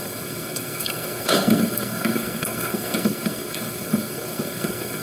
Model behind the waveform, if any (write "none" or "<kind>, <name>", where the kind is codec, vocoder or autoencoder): codec, SNAC